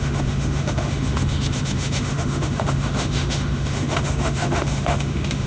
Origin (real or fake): fake